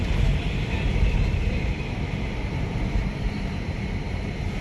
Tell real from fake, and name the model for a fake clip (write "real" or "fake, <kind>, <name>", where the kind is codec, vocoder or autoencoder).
fake, vocoder, BigVGAN v2